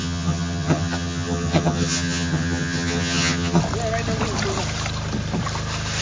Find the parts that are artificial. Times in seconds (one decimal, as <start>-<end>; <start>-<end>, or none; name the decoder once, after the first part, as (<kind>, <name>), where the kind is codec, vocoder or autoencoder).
0.0-3.6 (vocoder, HiFi-GAN)